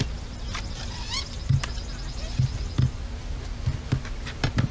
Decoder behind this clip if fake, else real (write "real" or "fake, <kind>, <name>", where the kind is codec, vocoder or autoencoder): real